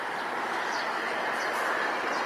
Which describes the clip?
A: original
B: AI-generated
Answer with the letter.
A